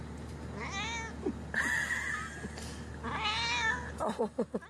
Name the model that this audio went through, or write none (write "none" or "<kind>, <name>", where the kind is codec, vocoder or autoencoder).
none